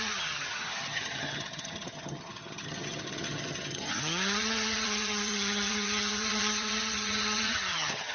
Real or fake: fake